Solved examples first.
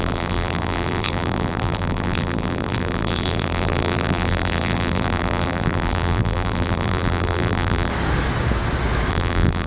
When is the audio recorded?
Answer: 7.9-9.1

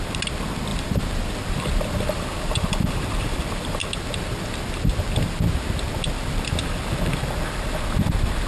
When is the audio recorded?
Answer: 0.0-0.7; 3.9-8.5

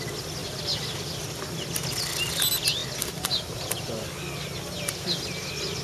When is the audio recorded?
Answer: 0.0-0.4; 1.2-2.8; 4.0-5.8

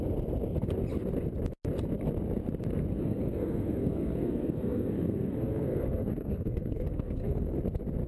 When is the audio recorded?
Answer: 0.0-2.9; 7.6-8.1